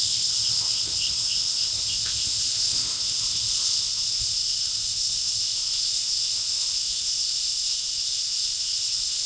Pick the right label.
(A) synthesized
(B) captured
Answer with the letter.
A